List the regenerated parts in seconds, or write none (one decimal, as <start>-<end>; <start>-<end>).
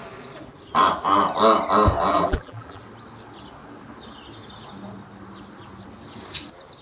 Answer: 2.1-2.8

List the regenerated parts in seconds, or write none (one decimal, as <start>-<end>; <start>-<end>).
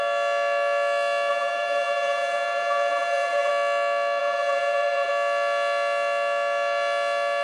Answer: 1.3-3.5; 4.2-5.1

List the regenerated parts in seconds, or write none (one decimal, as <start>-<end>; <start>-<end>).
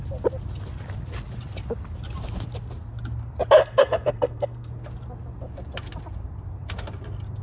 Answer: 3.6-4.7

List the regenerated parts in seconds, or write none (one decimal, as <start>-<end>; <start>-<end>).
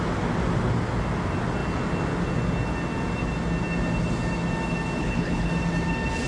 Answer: 5.0-5.5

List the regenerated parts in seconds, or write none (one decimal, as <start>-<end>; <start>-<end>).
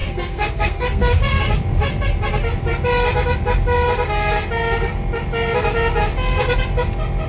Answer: 0.0-1.4